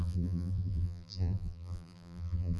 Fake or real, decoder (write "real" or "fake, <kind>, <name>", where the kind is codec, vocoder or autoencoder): fake, vocoder, BigVGAN v2